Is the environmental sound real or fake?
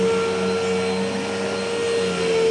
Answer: real